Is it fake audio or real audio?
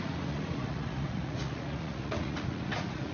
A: fake